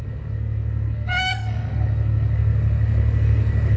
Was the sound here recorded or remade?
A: remade